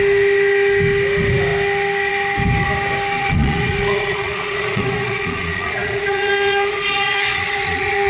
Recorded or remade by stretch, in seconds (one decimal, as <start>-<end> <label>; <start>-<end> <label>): 0.0-3.2 recorded; 3.2-8.1 remade